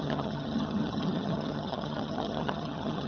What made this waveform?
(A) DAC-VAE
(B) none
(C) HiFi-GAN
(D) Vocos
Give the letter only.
C